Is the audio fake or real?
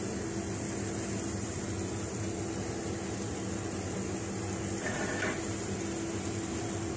real